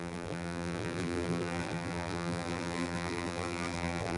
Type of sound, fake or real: fake